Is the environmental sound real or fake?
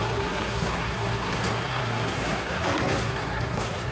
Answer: fake